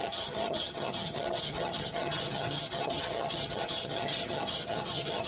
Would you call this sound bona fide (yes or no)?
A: no